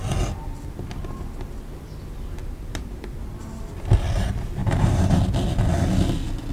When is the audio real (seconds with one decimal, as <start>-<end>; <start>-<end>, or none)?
0.0-2.4; 3.4-4.6; 5.2-6.5